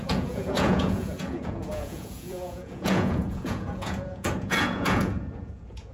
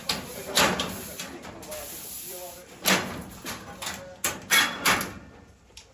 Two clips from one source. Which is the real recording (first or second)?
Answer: second